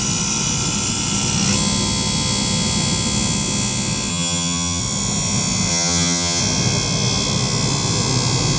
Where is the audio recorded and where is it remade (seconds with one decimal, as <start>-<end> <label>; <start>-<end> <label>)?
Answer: 0.0-4.1 recorded; 4.1-4.8 remade; 4.8-5.7 recorded; 5.7-6.4 remade; 6.4-8.6 recorded